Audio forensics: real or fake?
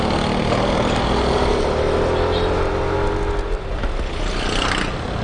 real